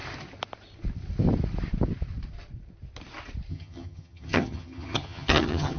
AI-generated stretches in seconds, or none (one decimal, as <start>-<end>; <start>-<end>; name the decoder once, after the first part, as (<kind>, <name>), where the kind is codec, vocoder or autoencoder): 3.5-5.8 (vocoder, HiFi-GAN)